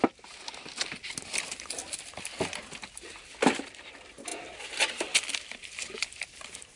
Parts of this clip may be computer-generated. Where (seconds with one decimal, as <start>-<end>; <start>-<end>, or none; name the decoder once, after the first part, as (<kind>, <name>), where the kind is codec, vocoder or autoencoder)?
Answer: none